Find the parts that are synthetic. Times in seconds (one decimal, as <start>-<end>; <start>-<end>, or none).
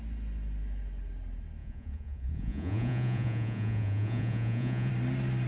1.6-4.9